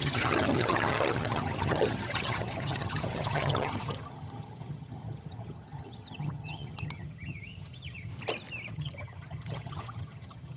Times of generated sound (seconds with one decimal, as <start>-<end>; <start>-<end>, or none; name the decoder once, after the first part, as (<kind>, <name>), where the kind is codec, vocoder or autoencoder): 0.0-8.1 (vocoder, HiFi-GAN); 8.7-10.6